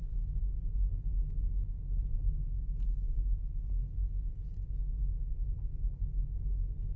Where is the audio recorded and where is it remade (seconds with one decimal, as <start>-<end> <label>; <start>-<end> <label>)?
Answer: 0.0-7.0 recorded